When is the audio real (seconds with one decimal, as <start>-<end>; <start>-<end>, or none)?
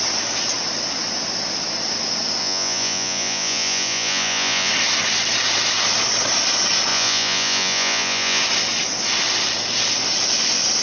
0.0-2.4; 4.7-6.9; 8.4-10.8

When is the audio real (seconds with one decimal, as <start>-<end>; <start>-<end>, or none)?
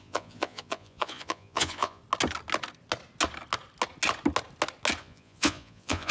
2.0-5.0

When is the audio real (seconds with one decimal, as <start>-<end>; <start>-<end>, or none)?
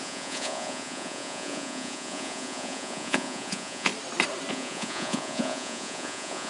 3.9-4.5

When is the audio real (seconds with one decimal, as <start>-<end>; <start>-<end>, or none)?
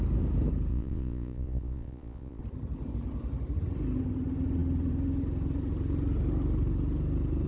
0.0-0.7; 2.4-7.5